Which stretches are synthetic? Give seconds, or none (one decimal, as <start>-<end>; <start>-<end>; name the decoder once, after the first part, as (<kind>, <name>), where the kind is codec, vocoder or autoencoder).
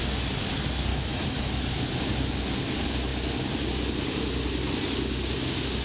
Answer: 0.9-1.6 (autoencoder, DAC-VAE)